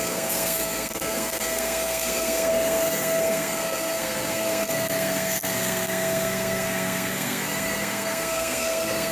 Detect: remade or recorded remade